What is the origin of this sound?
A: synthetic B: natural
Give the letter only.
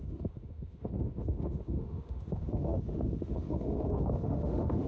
A